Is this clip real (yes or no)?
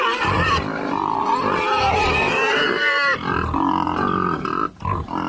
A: yes